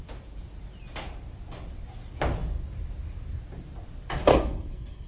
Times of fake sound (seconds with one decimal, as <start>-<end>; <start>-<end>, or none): 4.3-5.1